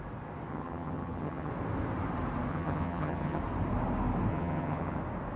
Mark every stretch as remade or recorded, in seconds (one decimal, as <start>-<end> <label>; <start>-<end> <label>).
0.0-0.5 recorded; 0.5-1.5 remade; 1.5-2.5 recorded; 2.5-3.4 remade; 3.4-4.3 recorded; 4.3-5.0 remade; 5.0-5.4 recorded